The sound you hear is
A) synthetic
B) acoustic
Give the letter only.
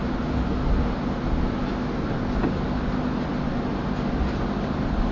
B